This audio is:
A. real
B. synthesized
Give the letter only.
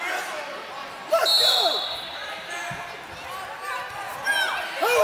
A